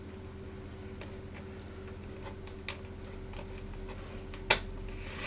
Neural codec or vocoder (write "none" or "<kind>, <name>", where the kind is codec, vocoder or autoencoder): none